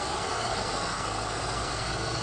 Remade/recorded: remade